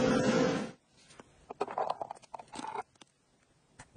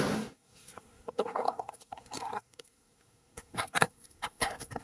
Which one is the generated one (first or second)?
second